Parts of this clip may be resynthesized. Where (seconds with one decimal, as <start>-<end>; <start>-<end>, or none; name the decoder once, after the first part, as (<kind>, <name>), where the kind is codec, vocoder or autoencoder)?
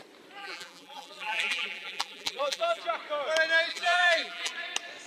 0.4-2.8 (vocoder, BigVGAN v2); 3.7-4.5